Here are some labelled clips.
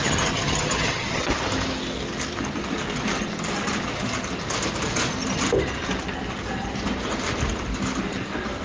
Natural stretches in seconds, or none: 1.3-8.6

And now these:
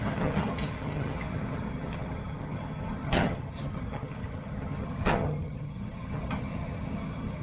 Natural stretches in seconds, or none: none

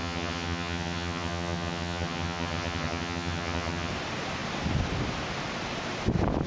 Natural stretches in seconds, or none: 3.9-6.5

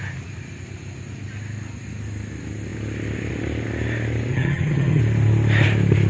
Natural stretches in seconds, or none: 0.0-4.3; 5.0-6.1